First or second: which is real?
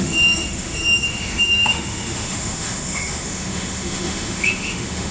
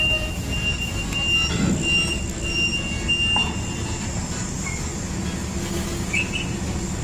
second